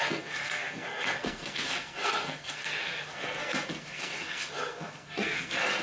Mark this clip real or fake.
fake